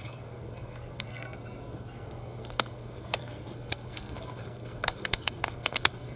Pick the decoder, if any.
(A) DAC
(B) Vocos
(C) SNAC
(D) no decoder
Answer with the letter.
C